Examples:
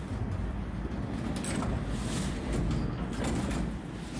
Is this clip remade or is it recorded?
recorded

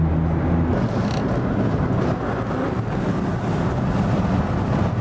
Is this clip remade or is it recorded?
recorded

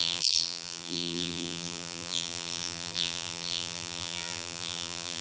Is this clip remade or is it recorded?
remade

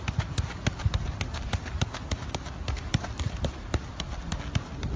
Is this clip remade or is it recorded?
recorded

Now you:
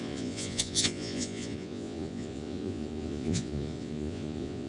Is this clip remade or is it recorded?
remade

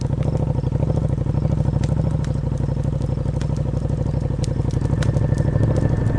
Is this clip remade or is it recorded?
recorded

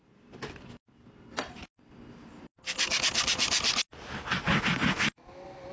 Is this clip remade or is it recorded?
recorded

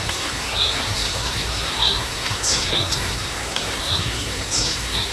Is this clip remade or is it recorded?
remade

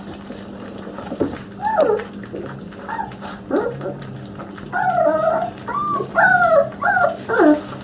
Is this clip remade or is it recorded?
recorded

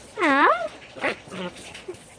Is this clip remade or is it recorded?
remade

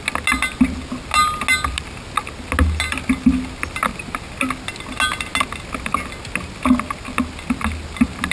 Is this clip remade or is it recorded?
recorded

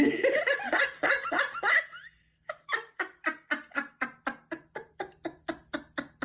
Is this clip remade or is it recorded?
recorded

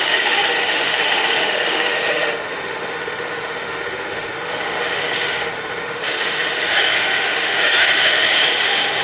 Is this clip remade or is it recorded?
remade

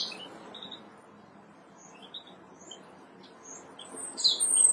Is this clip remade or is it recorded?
recorded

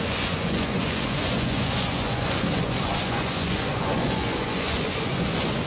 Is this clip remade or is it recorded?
remade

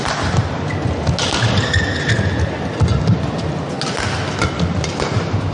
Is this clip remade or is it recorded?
recorded